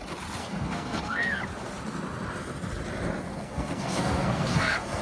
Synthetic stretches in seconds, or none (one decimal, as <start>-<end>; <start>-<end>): 0.4-1.4; 3.3-5.0